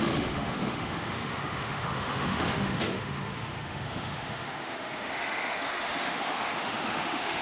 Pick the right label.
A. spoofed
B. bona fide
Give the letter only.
A